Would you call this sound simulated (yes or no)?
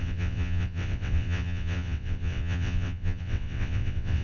yes